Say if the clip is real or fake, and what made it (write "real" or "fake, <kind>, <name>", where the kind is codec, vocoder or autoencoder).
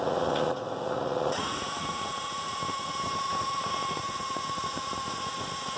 fake, vocoder, Vocos